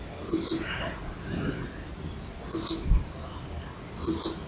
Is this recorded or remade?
recorded